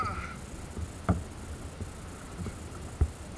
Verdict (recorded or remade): recorded